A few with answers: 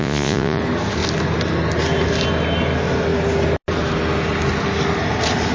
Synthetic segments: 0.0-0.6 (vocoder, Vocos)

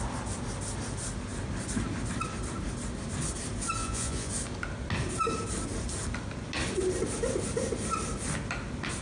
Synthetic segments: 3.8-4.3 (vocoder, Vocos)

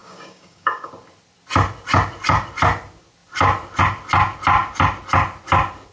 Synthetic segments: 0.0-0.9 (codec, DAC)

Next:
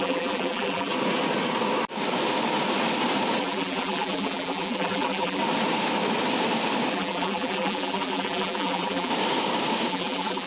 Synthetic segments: 0.0-0.9 (vocoder, BigVGAN v2); 3.4-5.4; 6.9-9.1; 9.9-10.5

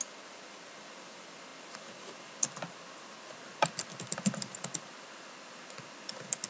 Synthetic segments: none

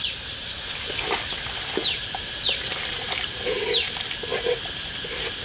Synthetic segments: 1.8-3.9 (vocoder, BigVGAN v2); 4.3-4.9

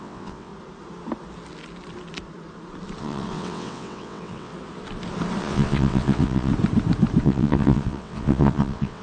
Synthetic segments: 0.0-0.5 (vocoder, WaveNeXt); 3.0-4.5; 5.4-6.5; 7.2-9.0